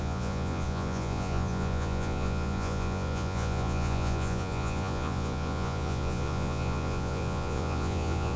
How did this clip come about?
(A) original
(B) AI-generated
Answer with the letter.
B